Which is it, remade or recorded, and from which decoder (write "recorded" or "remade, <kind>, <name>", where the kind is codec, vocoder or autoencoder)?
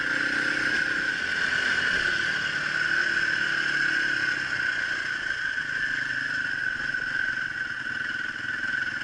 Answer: recorded